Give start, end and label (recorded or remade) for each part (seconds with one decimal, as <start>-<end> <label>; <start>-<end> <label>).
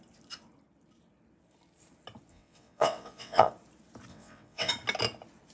0.0-2.3 recorded; 2.3-3.5 remade; 3.5-4.1 recorded; 4.1-4.7 remade; 4.7-5.5 recorded